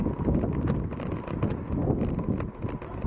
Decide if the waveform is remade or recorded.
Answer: recorded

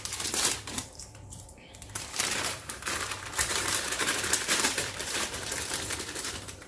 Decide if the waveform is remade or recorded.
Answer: remade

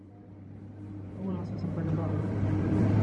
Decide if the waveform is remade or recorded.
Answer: remade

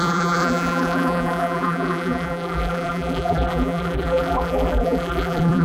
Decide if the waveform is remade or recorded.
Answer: remade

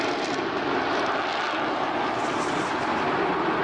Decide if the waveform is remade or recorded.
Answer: recorded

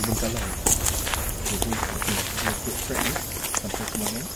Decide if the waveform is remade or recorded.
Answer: recorded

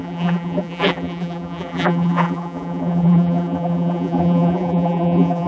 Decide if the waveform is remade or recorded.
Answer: remade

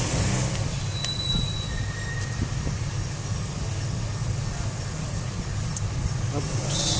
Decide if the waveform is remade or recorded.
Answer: recorded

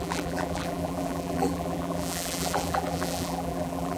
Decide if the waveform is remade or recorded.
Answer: remade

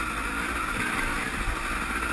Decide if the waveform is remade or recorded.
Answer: recorded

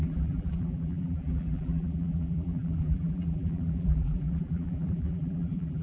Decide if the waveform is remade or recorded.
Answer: remade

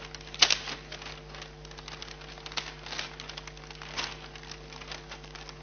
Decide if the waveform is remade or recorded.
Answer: recorded